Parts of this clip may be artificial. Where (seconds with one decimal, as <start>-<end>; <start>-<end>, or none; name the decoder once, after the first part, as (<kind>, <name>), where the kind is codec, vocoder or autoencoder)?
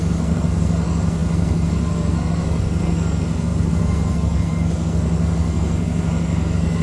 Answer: 0.0-6.8 (codec, SNAC)